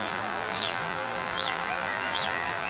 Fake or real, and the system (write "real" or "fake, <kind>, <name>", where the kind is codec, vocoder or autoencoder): fake, vocoder, BigVGAN v2